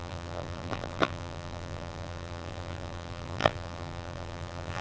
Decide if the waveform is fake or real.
fake